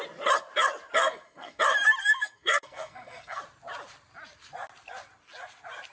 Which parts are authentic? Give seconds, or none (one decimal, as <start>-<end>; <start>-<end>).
0.0-1.0; 1.6-2.0; 3.4-5.9